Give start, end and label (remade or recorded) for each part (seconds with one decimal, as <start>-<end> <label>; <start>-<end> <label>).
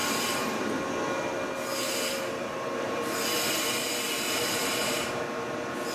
0.0-0.8 remade; 0.8-1.7 recorded; 1.7-5.2 remade; 5.2-5.9 recorded